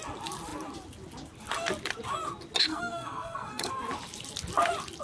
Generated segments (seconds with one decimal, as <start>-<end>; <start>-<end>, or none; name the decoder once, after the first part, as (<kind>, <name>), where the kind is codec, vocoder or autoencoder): 2.7-3.7 (codec, SNAC)